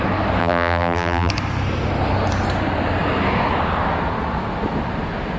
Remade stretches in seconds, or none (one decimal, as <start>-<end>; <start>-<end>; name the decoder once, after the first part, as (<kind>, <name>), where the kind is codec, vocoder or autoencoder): 0.4-1.3 (vocoder, BigVGAN v2)